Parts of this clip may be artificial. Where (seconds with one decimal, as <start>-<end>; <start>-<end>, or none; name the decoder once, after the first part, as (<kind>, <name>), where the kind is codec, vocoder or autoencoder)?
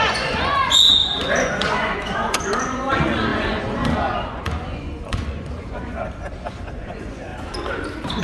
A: 0.0-7.3 (vocoder, Vocos)